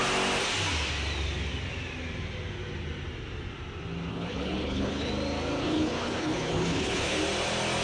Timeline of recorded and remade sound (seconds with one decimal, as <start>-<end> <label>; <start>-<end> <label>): 0.0-4.1 recorded; 4.1-5.1 remade; 5.1-5.6 recorded; 5.6-7.2 remade; 7.2-7.8 recorded

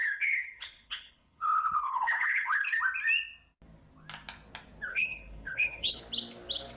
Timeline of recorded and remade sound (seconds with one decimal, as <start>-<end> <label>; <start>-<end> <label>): 0.0-2.8 remade; 2.8-4.9 recorded; 4.9-6.0 remade; 6.0-6.8 recorded

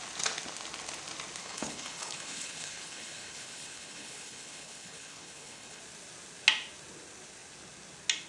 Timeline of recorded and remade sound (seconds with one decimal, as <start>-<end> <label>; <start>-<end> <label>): 0.0-1.4 recorded; 1.4-5.8 remade; 5.8-8.3 recorded

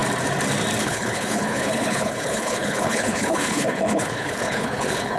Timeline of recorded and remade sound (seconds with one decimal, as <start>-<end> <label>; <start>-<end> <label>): 0.0-0.8 recorded; 0.8-5.2 remade

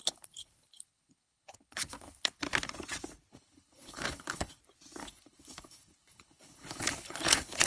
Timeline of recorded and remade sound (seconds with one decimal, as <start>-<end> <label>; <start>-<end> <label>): 0.0-2.4 remade; 2.4-3.3 recorded; 3.3-4.6 remade; 4.6-5.0 recorded; 5.0-7.7 remade

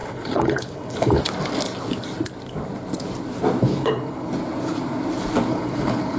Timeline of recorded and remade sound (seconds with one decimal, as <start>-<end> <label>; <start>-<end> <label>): 0.0-1.2 remade; 1.2-3.7 recorded; 3.7-4.3 remade; 4.3-5.5 recorded; 5.5-6.2 remade